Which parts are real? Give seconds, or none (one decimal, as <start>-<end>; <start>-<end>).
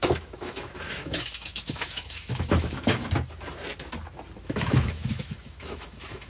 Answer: 3.0-4.4